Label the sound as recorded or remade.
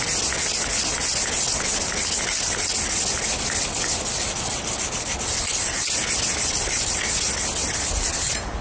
recorded